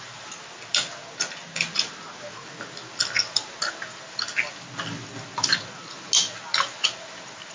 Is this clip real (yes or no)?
yes